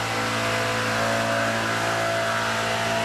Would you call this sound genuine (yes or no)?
yes